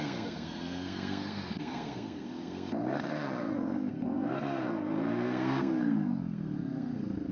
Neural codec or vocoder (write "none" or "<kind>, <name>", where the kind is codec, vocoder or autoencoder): codec, SNAC